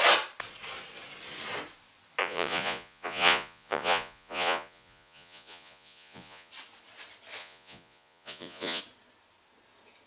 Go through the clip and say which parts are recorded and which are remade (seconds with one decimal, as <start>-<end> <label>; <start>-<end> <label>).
0.0-2.2 recorded; 2.2-6.5 remade; 6.5-7.4 recorded; 7.4-8.8 remade; 8.8-10.1 recorded